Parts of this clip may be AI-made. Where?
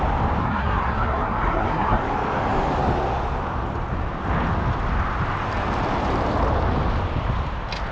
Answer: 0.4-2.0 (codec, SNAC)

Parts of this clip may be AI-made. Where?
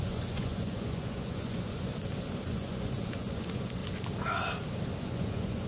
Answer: 0.0-1.9 (vocoder, Vocos); 2.5-3.8; 5.0-5.7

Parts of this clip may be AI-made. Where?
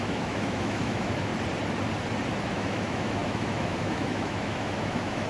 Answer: 0.0-1.3 (autoencoder, DAC-VAE); 2.5-5.3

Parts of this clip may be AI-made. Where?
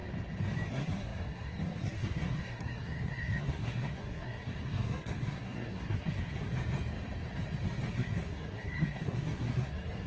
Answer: 0.7-6.5 (codec, SNAC); 7.9-10.1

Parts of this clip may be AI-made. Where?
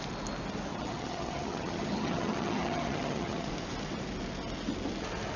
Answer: 0.7-3.5 (vocoder, HiFi-GAN)